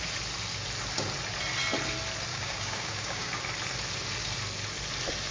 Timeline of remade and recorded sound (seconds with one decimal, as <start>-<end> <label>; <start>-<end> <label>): 0.0-2.3 recorded; 2.3-3.4 remade; 3.4-5.3 recorded